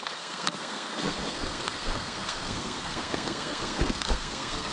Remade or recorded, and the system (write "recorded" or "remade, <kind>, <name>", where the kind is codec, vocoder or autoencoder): remade, codec, SNAC